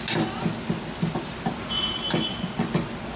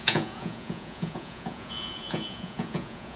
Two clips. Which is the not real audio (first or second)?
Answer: second